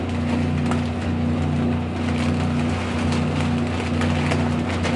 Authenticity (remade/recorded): recorded